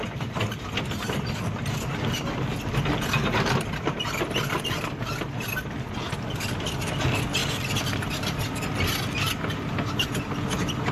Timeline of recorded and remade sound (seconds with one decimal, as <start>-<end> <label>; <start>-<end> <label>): 0.0-7.4 recorded; 7.4-8.4 remade; 8.4-10.9 recorded